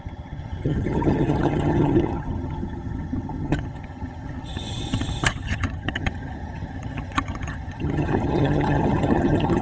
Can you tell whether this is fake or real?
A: fake